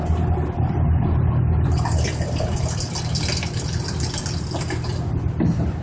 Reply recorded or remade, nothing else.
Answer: recorded